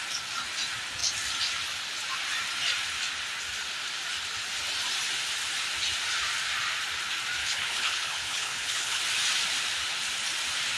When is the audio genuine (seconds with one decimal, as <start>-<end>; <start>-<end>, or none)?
0.0-7.4; 9.0-10.8